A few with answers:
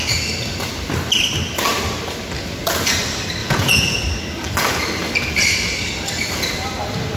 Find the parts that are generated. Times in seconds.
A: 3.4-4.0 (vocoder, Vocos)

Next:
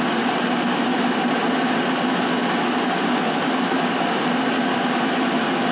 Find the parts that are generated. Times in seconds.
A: none